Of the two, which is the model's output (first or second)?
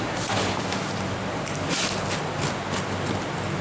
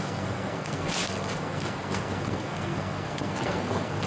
second